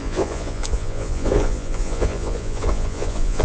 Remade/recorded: remade